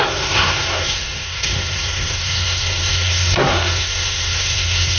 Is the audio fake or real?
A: fake